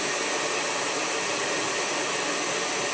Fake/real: real